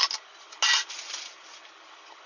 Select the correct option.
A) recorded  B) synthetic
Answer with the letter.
A